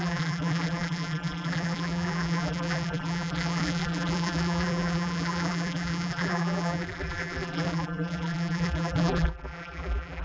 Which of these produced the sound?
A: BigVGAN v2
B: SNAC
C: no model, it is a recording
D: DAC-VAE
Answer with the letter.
A